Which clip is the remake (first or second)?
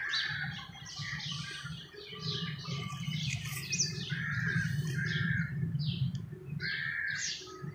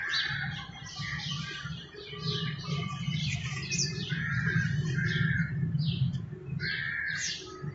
first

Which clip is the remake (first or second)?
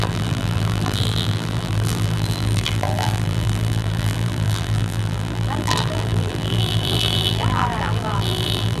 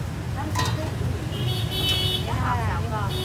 first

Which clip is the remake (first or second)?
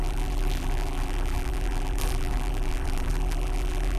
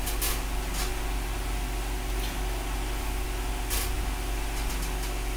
first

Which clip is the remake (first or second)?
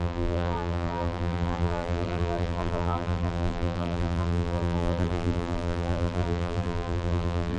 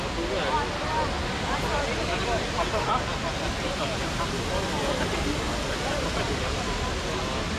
first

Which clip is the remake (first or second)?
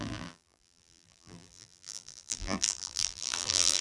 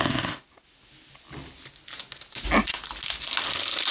first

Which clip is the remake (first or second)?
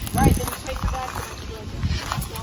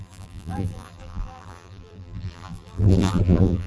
second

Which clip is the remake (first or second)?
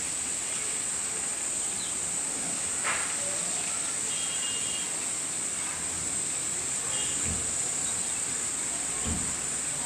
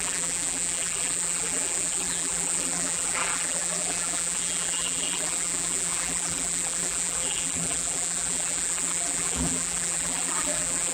second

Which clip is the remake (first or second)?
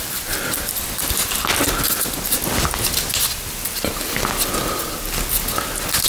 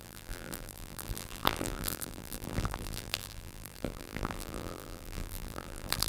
second